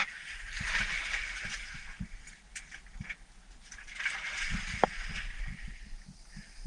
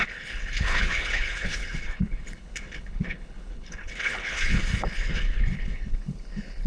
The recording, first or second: first